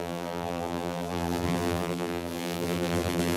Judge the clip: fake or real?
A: fake